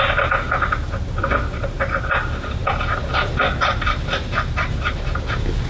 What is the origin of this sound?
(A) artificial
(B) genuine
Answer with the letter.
B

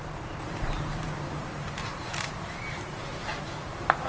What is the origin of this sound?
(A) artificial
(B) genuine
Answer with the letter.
A